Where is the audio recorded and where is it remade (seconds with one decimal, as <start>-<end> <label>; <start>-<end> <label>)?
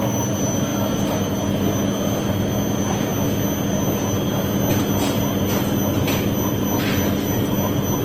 0.0-8.0 recorded